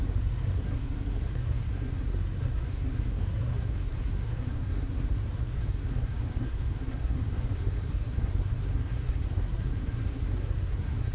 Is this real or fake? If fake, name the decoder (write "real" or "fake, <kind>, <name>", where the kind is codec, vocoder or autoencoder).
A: fake, codec, SNAC